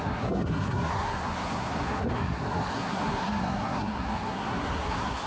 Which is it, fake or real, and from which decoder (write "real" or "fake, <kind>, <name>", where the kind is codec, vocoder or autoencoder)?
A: fake, codec, SNAC